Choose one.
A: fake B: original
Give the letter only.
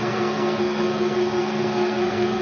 A